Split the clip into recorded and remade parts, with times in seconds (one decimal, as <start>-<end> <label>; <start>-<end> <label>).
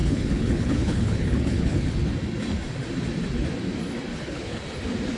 0.0-2.1 remade; 2.1-4.1 recorded; 4.1-4.6 remade; 4.6-5.2 recorded